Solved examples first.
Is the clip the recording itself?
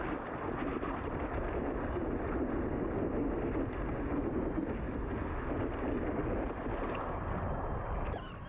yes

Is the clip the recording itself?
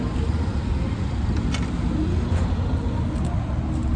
yes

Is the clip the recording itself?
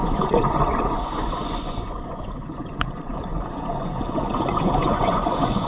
no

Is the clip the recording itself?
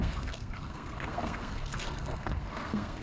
no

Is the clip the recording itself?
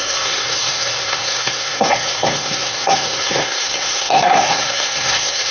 no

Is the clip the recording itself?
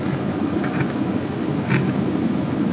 yes